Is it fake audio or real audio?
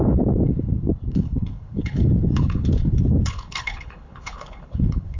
fake